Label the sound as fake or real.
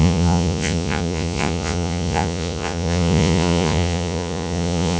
fake